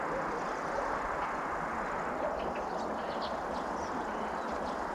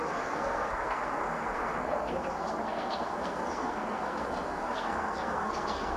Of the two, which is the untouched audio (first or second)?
first